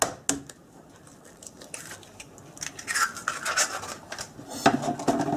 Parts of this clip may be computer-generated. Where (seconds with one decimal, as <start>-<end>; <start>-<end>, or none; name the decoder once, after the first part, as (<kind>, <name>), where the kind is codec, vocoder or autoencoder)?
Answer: none